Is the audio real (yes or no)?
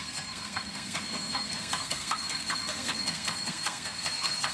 no